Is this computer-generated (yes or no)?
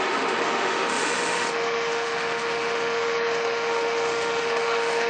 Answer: yes